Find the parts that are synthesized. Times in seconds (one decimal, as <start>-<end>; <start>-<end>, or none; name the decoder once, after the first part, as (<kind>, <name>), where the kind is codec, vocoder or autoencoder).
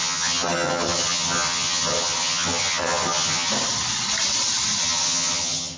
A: 0.0-3.5 (vocoder, HiFi-GAN); 4.8-5.8